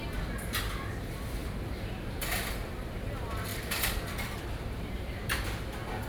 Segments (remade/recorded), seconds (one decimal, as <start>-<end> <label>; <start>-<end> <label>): 0.0-1.4 recorded; 1.4-2.9 remade; 2.9-3.5 recorded; 3.5-5.2 remade; 5.2-6.1 recorded